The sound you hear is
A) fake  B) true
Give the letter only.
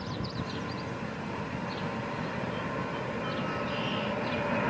B